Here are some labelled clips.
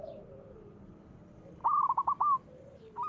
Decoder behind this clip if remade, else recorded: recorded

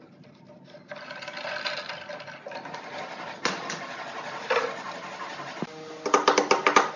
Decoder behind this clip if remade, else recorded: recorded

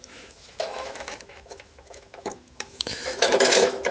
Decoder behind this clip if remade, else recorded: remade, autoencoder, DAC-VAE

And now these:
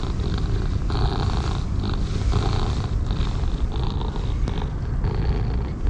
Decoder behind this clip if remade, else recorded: recorded